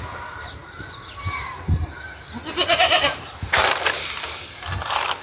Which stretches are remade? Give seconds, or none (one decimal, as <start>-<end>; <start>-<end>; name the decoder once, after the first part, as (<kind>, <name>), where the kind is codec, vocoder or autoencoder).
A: none